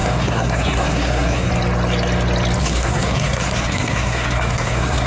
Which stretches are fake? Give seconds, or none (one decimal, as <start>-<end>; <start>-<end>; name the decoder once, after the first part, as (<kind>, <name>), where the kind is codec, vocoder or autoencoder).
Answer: 0.0-1.5 (codec, SNAC); 2.6-5.1